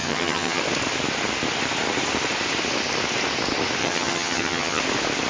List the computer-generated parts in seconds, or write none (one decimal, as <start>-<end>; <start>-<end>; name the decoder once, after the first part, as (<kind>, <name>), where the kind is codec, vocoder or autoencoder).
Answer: 0.0-0.6 (vocoder, HiFi-GAN); 3.8-4.8